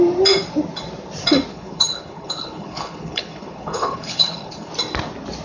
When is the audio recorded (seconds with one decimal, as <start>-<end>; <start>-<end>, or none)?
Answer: 0.0-1.5; 4.7-5.4

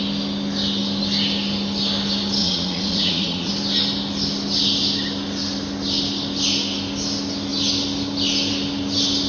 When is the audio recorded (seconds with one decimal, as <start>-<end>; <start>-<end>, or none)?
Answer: 0.0-2.4; 3.5-9.3

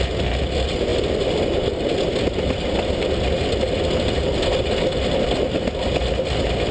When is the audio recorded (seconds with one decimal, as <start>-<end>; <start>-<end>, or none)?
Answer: 0.0-6.7

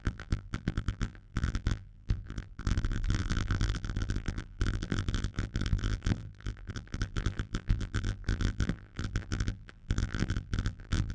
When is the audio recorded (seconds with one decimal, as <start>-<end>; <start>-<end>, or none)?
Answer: none

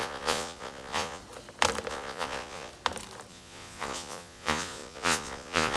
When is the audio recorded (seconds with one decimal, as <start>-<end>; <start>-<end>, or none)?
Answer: 1.2-1.9; 2.7-3.3

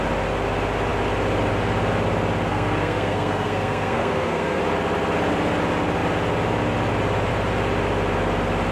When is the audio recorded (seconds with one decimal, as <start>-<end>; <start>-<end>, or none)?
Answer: 0.0-2.5; 4.6-8.7

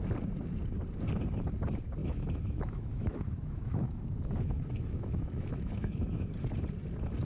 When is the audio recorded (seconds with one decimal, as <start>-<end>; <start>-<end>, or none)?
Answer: 0.0-2.0; 6.3-7.2